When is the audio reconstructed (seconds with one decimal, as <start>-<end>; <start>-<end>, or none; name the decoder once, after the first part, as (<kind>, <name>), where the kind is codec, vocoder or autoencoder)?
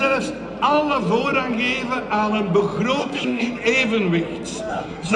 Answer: 3.0-3.5 (codec, SNAC); 4.7-5.2